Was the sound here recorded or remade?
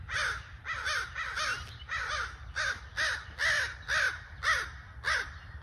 recorded